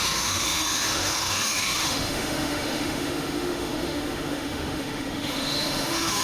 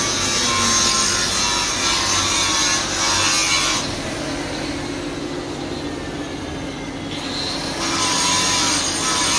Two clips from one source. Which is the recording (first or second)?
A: second